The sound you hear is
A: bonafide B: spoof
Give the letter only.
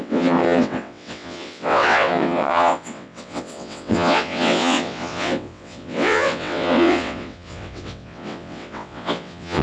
B